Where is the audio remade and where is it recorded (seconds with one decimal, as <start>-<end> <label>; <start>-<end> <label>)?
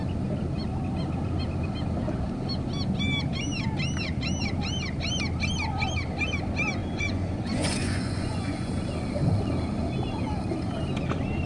0.0-6.8 recorded; 6.8-8.7 remade; 8.7-11.5 recorded